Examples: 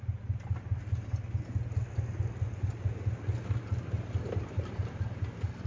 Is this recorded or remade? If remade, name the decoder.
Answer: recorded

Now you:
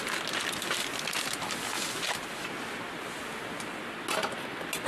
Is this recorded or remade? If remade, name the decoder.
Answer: recorded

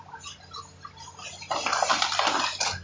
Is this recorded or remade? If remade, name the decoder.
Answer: recorded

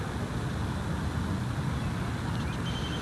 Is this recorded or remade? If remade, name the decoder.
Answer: recorded